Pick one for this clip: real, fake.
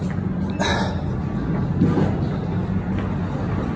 real